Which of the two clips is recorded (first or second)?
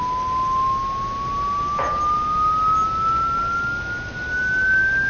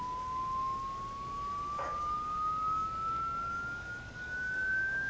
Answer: first